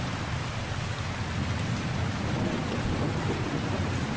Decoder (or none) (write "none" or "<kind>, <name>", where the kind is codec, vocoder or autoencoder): none